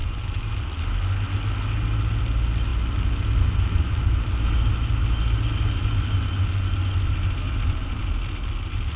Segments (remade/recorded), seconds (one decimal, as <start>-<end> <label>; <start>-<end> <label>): 0.0-9.0 recorded